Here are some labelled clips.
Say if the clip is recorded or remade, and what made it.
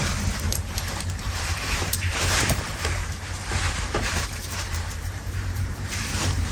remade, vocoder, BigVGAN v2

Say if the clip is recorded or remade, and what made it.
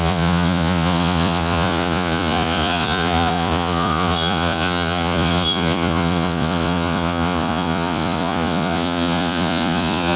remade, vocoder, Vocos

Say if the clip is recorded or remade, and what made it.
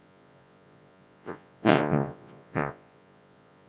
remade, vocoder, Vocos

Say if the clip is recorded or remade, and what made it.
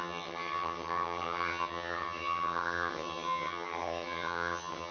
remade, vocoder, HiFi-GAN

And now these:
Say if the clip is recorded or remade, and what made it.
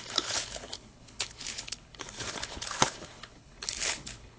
remade, codec, HILCodec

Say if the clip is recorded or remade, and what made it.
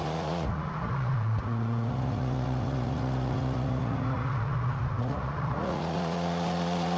remade, vocoder, Vocos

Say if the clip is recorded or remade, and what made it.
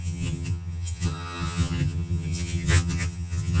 remade, vocoder, HiFi-GAN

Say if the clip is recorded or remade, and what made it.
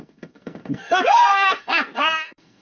remade, codec, SNAC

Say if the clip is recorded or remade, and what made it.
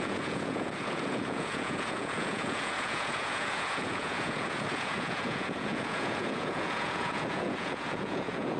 remade, vocoder, Vocos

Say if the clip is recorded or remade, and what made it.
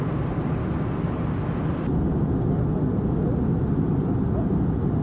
recorded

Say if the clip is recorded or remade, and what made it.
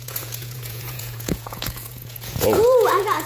remade, vocoder, Vocos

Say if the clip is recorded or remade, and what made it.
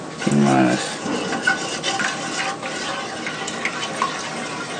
recorded